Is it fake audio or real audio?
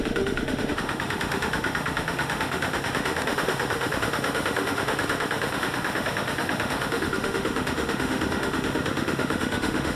fake